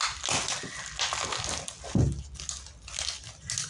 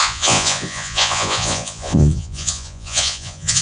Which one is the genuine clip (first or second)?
first